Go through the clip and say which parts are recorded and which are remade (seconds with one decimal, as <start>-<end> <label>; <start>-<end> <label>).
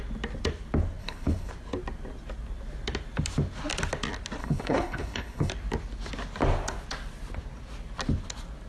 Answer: 0.0-1.0 recorded; 1.0-1.5 remade; 1.5-4.4 recorded; 4.4-5.5 remade; 5.5-8.7 recorded